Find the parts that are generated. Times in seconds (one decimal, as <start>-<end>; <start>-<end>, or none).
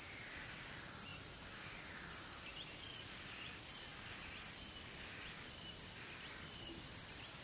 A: 0.0-3.9; 5.0-7.4